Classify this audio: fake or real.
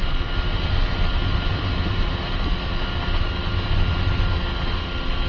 real